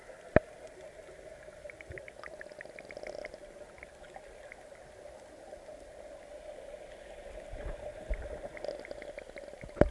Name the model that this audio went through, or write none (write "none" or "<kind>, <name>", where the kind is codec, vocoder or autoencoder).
none